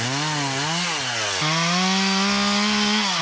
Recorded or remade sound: recorded